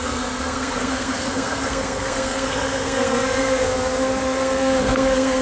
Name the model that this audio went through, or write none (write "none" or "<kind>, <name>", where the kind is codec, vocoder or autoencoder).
codec, SNAC